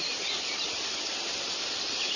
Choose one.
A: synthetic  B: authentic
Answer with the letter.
B